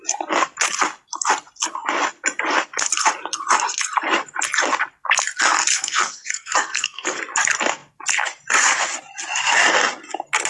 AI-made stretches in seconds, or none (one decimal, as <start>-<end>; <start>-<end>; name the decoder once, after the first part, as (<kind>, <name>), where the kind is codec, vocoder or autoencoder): 5.7-7.2 (codec, SNAC)